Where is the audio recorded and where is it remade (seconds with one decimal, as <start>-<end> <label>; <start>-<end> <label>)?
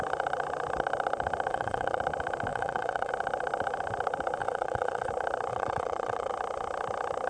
0.0-1.5 recorded; 1.5-2.0 remade; 2.0-2.5 recorded; 2.5-3.1 remade; 3.1-4.4 recorded; 4.4-5.1 remade; 5.1-5.5 recorded; 5.5-6.3 remade; 6.3-7.3 recorded